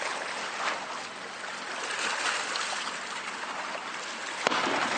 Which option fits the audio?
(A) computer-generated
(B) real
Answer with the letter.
B